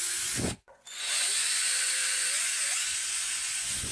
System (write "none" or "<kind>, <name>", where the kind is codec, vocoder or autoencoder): vocoder, Vocos